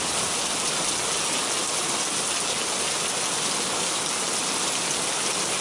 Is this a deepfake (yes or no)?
no